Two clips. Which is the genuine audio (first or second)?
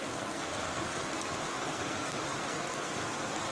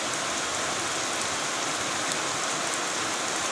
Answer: second